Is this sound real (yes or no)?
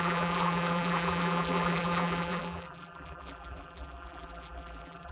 no